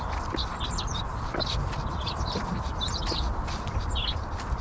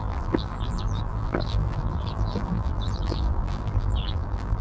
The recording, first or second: first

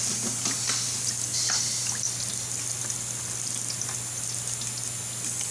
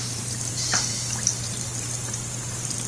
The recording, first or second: first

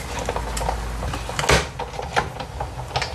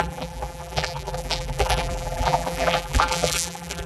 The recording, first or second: first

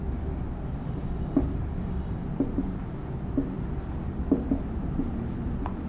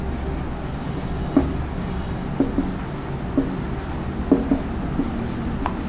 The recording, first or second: second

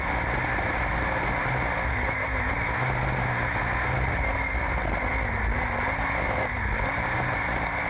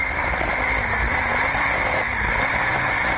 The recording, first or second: first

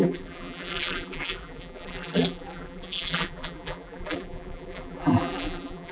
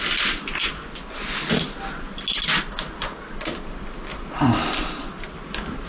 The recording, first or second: second